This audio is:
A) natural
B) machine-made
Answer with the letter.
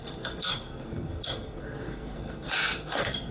B